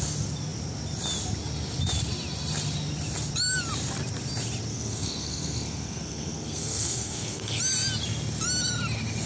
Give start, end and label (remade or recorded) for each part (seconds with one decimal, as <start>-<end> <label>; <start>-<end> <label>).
0.0-4.7 recorded; 4.7-7.6 remade; 7.6-9.3 recorded